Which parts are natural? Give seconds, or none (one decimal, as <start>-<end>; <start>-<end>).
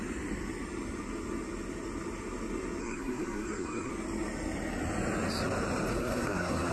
0.0-2.8; 3.9-5.9